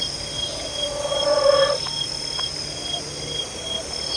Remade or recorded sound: recorded